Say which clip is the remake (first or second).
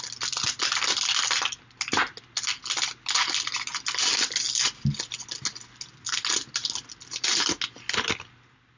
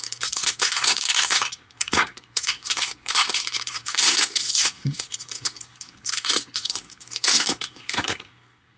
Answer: second